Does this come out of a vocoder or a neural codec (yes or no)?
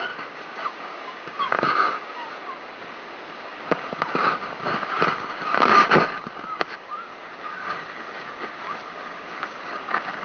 yes